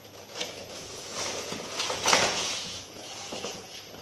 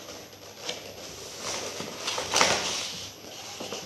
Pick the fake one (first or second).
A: first